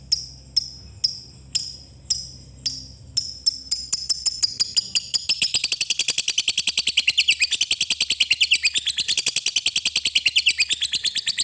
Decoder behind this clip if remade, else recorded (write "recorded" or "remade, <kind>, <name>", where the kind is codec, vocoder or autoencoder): recorded